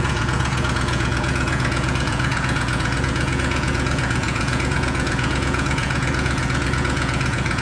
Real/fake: fake